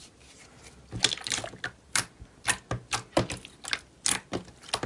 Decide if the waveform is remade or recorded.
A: recorded